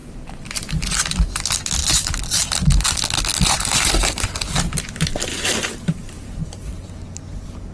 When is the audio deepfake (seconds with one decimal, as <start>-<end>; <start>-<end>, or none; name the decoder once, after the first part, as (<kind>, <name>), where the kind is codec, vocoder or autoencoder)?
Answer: 0.0-0.8 (vocoder, BigVGAN v2); 1.8-2.4; 5.3-6.6